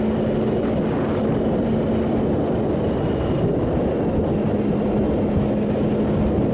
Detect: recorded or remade recorded